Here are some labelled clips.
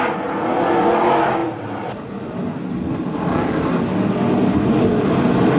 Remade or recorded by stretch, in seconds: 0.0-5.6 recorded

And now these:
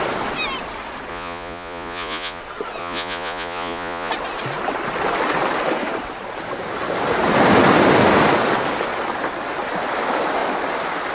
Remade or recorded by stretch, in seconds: 0.0-1.1 recorded; 1.1-2.4 remade; 2.4-2.8 recorded; 2.8-4.1 remade; 4.1-11.1 recorded

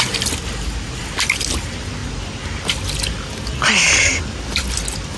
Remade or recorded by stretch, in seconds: 0.0-5.2 recorded

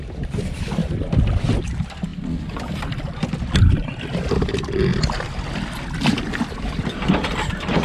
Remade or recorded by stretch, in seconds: 0.0-7.8 recorded

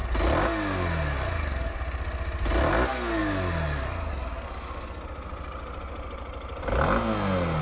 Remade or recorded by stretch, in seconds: 0.0-7.6 recorded

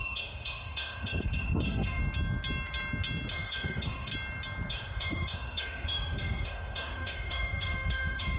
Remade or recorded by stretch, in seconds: 0.0-2.0 remade; 2.0-3.3 recorded; 3.3-4.1 remade; 4.1-4.7 recorded; 4.7-8.4 remade